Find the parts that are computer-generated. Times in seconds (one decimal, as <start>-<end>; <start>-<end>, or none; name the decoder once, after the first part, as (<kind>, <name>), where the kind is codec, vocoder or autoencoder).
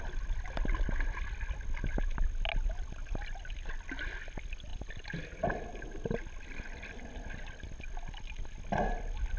4.7-6.2 (vocoder, BigVGAN v2)